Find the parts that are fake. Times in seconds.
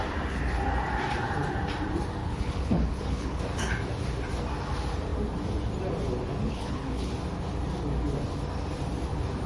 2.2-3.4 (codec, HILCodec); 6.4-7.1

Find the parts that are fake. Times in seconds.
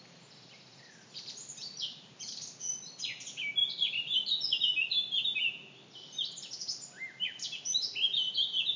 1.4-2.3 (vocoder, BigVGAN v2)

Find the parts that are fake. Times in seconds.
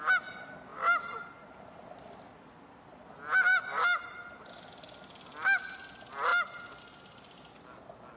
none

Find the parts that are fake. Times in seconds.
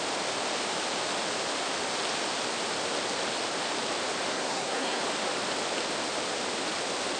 4.3-5.0 (codec, SNAC)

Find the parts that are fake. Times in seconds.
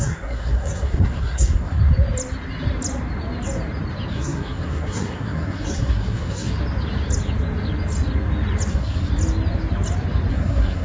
0.0-1.8 (codec, SNAC); 4.1-6.5; 8.7-9.1; 10.3-10.8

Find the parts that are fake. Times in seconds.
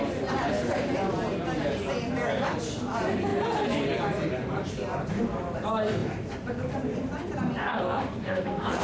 7.6-8.8 (codec, SNAC)